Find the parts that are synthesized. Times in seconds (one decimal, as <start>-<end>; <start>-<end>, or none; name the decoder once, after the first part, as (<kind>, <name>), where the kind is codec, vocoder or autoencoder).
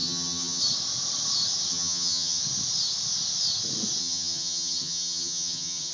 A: 0.0-0.6 (vocoder, HiFi-GAN); 1.7-2.4; 4.0-5.9